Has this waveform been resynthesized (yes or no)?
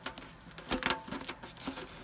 no